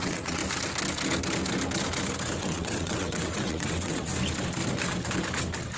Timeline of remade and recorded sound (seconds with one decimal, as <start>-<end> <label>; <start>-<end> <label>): 0.0-0.4 remade; 0.4-2.4 recorded; 2.4-4.1 remade; 4.1-5.8 recorded